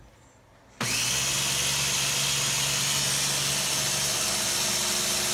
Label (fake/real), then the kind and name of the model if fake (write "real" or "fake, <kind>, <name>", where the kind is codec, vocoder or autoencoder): real